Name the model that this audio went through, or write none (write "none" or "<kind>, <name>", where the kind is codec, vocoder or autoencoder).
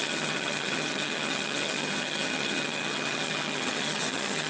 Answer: vocoder, HiFi-GAN